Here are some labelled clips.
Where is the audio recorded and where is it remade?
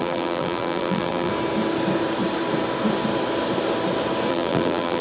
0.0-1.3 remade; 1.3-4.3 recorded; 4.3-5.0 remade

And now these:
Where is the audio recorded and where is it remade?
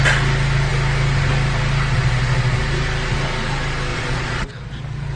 0.0-3.9 recorded; 3.9-4.5 remade; 4.5-5.2 recorded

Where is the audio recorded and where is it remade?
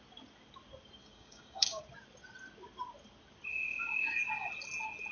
0.0-1.0 recorded; 1.0-1.8 remade; 1.8-3.5 recorded; 3.5-4.5 remade; 4.5-5.1 recorded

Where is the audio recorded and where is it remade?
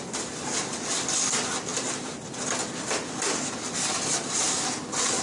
0.0-5.2 recorded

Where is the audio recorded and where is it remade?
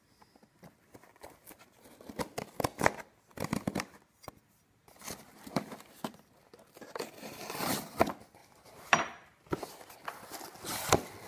0.0-3.3 recorded; 3.3-4.8 remade; 4.8-8.4 recorded; 8.4-9.5 remade; 9.5-11.3 recorded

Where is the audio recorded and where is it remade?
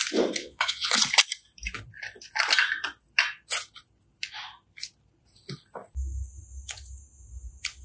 0.0-0.4 recorded; 0.4-0.9 remade; 0.9-7.8 recorded